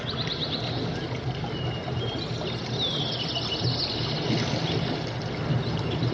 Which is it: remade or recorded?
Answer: recorded